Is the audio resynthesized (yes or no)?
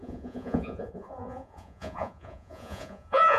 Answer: yes